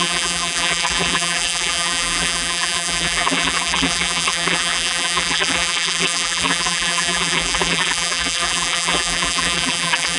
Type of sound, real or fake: fake